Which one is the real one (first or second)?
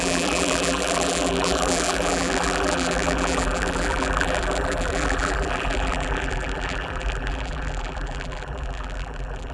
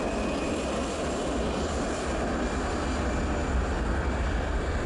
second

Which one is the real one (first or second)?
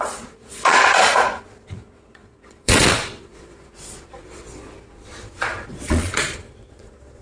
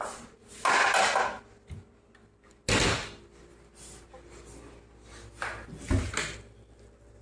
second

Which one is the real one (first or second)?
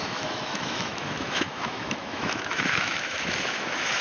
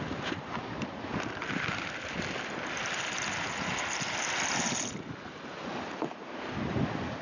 second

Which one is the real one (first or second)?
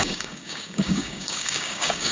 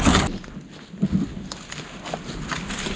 second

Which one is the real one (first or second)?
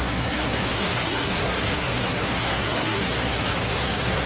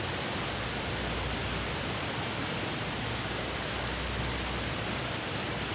second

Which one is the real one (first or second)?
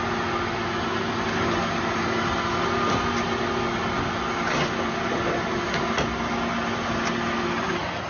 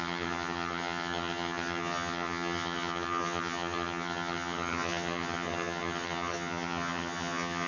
first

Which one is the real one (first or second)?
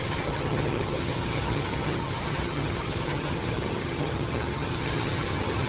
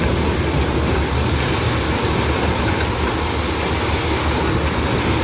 second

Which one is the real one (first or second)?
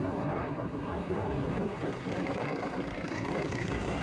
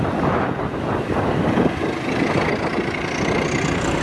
second